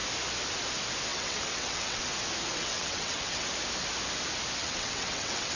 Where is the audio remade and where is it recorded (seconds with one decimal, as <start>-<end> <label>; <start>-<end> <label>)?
0.0-1.1 recorded; 1.1-2.0 remade; 2.0-2.5 recorded; 2.5-3.5 remade; 3.5-4.6 recorded; 4.6-5.6 remade